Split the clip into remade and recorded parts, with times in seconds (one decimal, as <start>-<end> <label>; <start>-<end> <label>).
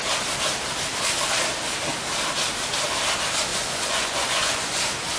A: 0.0-3.5 recorded; 3.5-4.8 remade; 4.8-5.2 recorded